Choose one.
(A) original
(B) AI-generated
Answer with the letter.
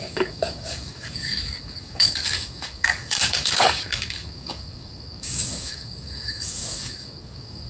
B